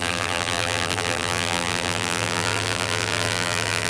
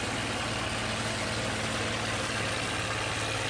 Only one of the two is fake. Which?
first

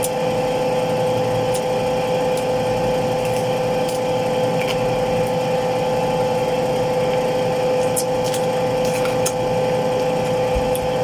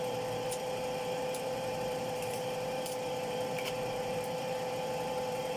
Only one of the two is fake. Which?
second